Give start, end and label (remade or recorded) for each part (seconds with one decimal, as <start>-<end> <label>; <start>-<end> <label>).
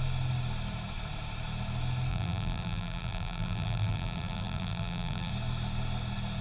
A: 0.0-2.1 recorded; 2.1-5.3 remade; 5.3-6.4 recorded